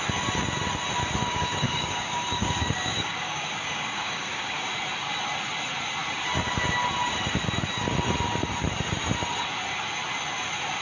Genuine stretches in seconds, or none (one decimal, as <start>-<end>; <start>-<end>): 0.0-1.2; 4.7-10.8